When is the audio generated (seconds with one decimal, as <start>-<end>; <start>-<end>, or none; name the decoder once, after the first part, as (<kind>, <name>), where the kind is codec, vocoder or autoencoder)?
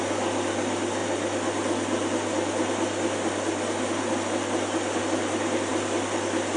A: none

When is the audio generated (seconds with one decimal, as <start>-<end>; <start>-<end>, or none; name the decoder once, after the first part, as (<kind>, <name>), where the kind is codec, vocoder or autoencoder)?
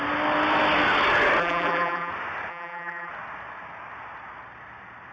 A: 1.4-2.1 (vocoder, BigVGAN v2); 2.5-3.1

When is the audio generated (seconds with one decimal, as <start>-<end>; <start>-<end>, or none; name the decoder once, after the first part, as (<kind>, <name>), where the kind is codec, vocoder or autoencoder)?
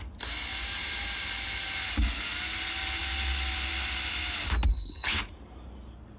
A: 4.7-5.2 (codec, HILCodec)